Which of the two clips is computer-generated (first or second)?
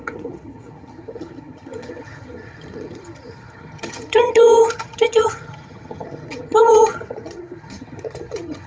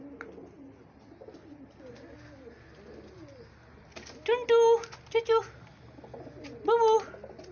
first